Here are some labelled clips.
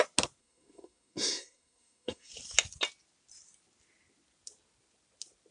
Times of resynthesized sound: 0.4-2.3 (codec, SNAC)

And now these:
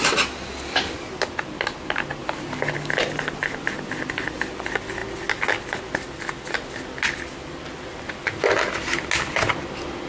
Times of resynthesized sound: none

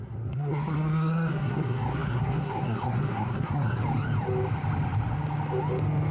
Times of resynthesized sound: 0.0-3.8 (codec, SNAC)

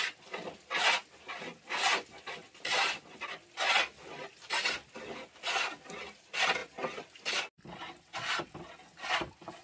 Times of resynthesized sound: none

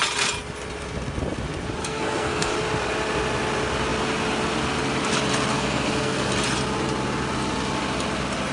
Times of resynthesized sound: 1.8-2.5 (codec, SNAC); 5.5-6.3